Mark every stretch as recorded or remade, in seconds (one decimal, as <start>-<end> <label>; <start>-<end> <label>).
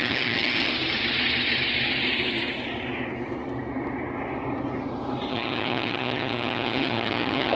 0.0-0.7 remade; 0.7-5.3 recorded; 5.3-7.6 remade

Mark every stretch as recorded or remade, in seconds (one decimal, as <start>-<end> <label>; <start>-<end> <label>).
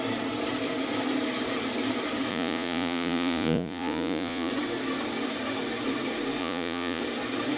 0.0-2.3 recorded; 2.3-4.5 remade; 4.5-6.4 recorded; 6.4-7.0 remade; 7.0-7.6 recorded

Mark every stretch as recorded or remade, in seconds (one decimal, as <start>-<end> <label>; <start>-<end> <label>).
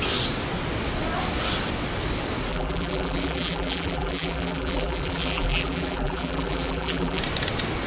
0.0-2.5 recorded; 2.5-7.2 remade; 7.2-7.9 recorded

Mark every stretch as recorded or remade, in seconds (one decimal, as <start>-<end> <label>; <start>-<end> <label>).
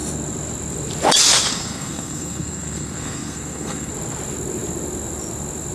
0.0-1.5 recorded; 1.5-3.9 remade; 3.9-5.7 recorded